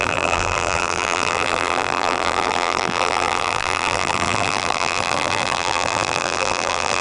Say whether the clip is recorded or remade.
remade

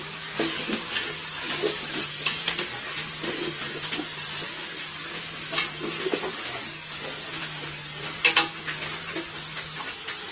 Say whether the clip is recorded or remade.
recorded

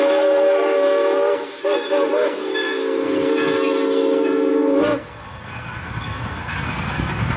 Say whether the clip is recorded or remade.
remade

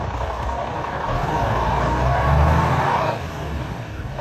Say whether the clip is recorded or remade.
remade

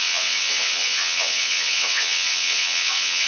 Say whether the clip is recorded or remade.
remade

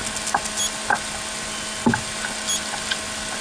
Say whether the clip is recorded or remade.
recorded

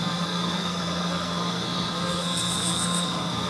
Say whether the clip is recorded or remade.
remade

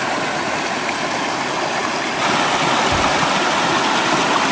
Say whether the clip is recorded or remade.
recorded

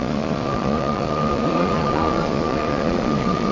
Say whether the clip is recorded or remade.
remade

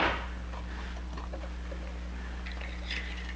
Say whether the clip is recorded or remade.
recorded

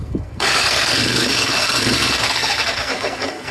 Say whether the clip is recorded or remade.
remade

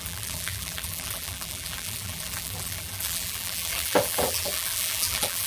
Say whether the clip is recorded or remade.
remade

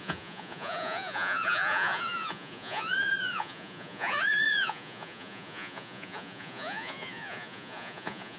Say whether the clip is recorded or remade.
remade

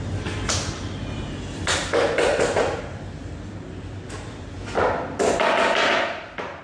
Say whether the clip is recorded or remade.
recorded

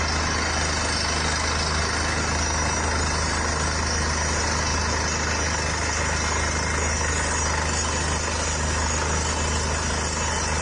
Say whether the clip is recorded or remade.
recorded